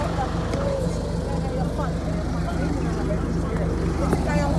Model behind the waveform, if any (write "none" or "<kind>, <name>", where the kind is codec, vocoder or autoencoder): none